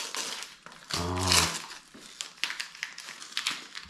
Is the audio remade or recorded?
recorded